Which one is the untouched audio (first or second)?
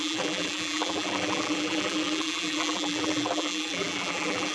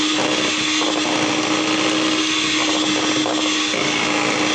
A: second